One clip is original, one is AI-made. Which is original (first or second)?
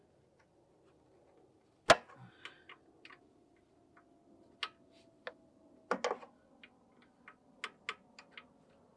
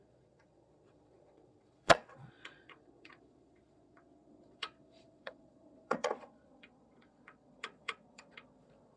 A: first